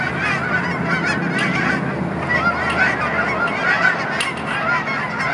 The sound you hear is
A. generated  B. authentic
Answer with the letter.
B